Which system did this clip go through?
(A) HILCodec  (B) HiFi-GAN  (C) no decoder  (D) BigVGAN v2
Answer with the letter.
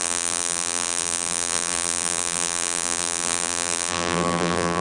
D